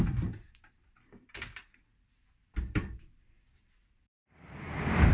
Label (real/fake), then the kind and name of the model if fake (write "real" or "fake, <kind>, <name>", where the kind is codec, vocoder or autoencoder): fake, vocoder, BigVGAN v2